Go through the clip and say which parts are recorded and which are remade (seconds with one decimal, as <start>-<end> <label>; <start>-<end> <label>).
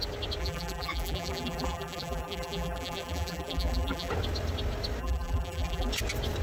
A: 0.0-0.4 recorded; 0.4-4.1 remade; 4.1-5.0 recorded; 5.0-5.9 remade; 5.9-6.4 recorded